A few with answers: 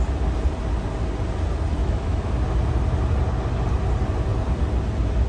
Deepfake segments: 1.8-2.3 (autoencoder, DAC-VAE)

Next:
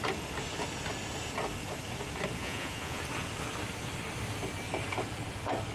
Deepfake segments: 2.4-3.0 (vocoder, Vocos)

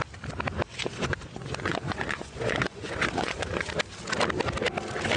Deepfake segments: 0.7-3.7 (vocoder, Vocos)

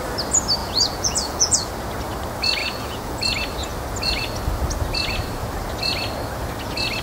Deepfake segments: 0.6-1.7 (vocoder, Vocos); 2.6-3.2